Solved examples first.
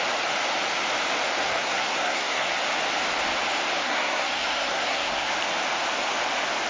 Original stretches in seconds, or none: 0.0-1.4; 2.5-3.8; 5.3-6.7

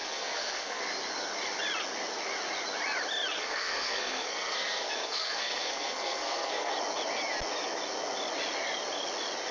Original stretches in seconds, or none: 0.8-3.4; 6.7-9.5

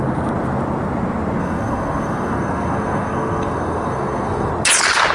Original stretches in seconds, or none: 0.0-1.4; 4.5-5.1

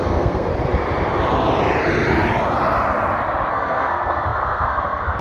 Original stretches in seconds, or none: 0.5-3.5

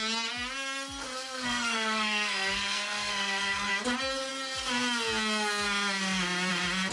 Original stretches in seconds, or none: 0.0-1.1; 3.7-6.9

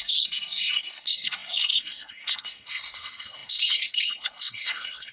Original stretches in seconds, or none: none

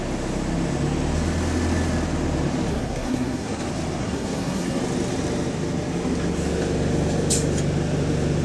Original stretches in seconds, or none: 0.0-2.7; 3.6-4.0; 4.8-8.4

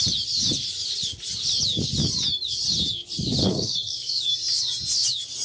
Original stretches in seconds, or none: 0.0-3.4; 4.2-5.4